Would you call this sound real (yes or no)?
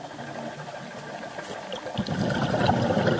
no